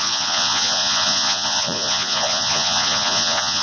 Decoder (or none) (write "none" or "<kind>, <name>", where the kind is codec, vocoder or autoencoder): vocoder, Vocos